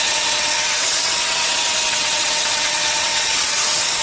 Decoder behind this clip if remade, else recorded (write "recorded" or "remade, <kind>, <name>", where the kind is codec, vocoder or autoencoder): remade, vocoder, WaveNeXt